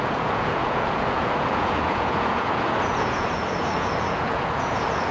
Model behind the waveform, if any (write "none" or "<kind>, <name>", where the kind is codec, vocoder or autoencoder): vocoder, Vocos